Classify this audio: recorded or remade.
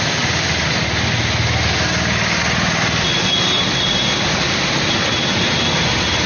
recorded